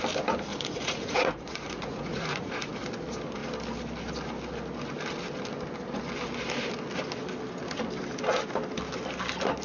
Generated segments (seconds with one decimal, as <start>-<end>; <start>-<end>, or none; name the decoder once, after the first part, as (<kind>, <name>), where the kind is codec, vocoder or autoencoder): 0.5-2.7 (vocoder, Vocos)